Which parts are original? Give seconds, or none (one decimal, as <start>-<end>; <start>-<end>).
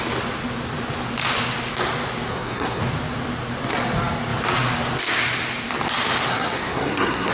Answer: 0.0-2.3; 2.8-6.3